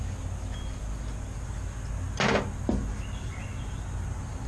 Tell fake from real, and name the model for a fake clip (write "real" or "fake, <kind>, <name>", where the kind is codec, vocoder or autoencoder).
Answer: real